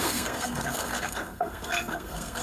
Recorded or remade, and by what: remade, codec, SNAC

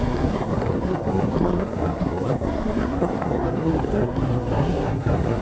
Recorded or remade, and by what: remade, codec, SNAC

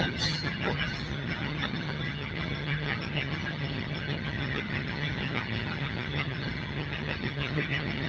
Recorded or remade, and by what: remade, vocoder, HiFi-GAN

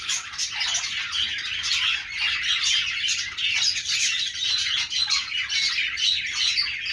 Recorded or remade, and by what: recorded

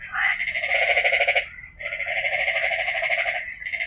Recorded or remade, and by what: recorded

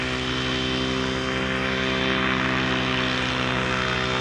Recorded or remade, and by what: recorded